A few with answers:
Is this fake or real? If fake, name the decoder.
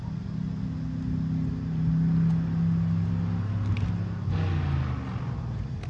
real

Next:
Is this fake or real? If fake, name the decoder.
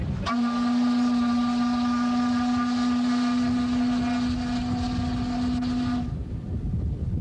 real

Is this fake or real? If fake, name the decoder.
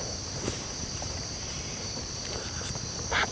fake, vocoder, BigVGAN v2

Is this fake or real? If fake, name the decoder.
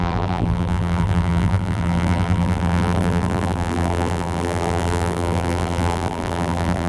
fake, vocoder, BigVGAN v2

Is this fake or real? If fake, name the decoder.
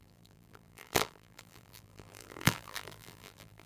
fake, vocoder, BigVGAN v2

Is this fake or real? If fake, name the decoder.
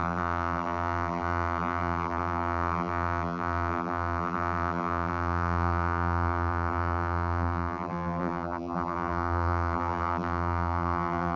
fake, vocoder, BigVGAN v2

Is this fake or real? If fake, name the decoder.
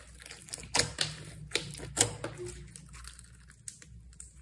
real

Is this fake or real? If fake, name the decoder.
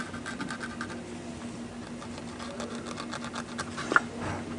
real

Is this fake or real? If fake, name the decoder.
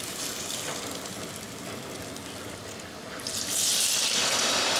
fake, vocoder, BigVGAN v2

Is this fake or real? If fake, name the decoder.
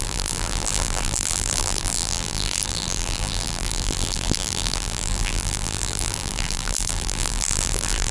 fake, vocoder, BigVGAN v2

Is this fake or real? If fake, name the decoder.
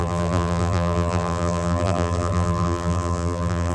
fake, vocoder, BigVGAN v2